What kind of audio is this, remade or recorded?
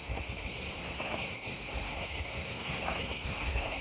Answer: remade